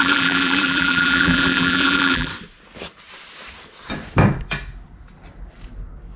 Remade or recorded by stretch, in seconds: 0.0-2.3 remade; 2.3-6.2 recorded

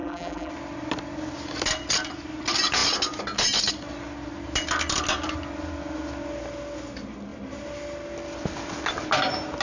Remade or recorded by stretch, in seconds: 0.0-0.5 remade; 0.5-9.6 recorded

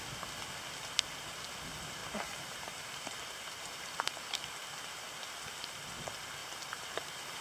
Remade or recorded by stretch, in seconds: 0.0-2.0 recorded; 2.0-4.4 remade; 4.4-6.4 recorded; 6.4-7.4 remade